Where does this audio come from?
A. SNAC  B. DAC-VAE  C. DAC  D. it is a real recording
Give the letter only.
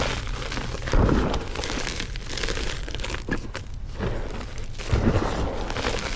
D